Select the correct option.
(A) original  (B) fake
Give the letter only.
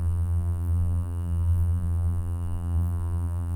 B